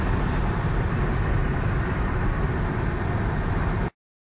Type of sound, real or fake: real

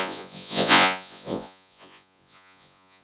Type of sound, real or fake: fake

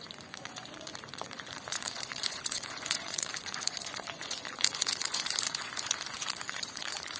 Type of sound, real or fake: fake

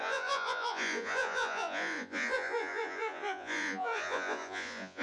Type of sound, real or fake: fake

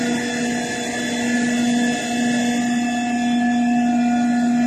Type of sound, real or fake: real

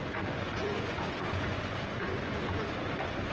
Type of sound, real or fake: fake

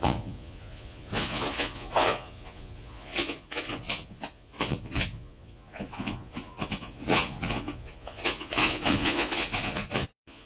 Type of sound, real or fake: fake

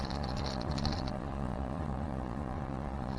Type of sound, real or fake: fake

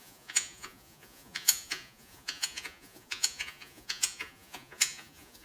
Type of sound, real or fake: fake